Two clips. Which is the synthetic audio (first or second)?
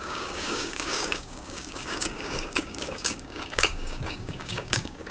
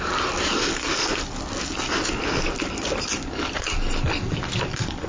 first